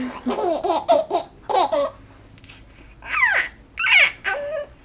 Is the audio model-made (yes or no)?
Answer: no